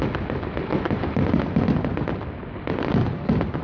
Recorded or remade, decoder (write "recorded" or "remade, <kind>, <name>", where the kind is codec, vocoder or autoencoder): recorded